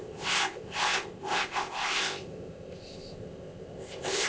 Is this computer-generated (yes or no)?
yes